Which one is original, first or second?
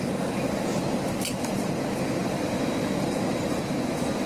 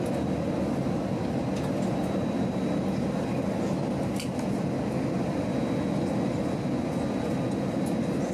second